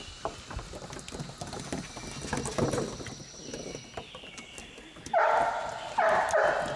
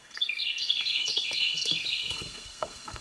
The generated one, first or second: second